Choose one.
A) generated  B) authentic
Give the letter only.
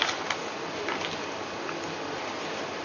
B